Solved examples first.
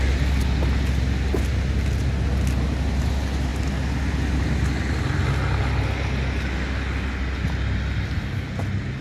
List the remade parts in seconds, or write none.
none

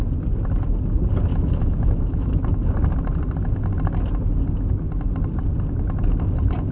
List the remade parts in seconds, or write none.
1.3-2.6 (autoencoder, DAC-VAE)

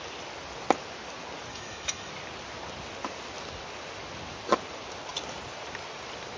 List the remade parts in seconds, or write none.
1.5-2.1 (autoencoder, DAC-VAE)

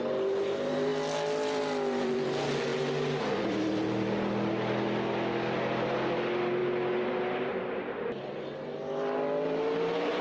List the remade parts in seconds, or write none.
none

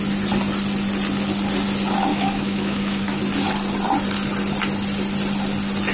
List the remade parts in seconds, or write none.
2.1-3.2 (autoencoder, DAC-VAE)

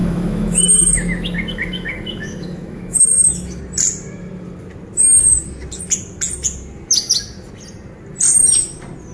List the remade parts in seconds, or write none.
0.0-3.6 (autoencoder, DAC-VAE)

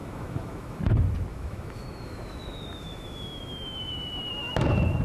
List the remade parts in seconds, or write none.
0.0-0.8 (autoencoder, DAC-VAE); 1.3-4.3

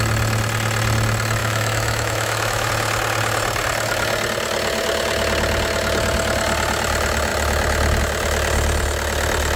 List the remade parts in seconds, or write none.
1.4-2.7 (autoencoder, DAC-VAE)